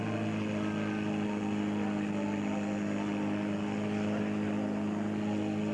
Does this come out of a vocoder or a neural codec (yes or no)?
no